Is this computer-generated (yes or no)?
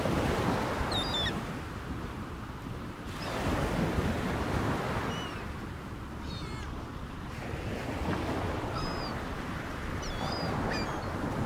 no